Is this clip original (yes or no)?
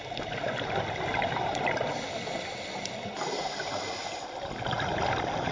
yes